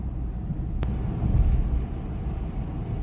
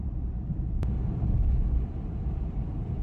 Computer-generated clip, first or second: second